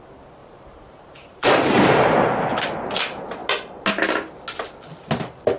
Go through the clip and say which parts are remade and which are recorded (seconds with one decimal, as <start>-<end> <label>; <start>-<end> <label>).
0.0-0.4 recorded; 0.4-1.9 remade; 1.9-5.6 recorded